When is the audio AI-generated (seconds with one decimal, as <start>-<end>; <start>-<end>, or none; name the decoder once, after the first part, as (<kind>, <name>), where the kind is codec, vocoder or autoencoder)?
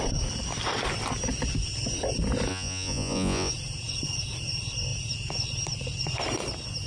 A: 2.5-3.5 (vocoder, Vocos)